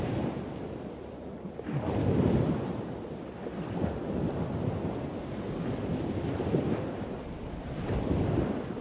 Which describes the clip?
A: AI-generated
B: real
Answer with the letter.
B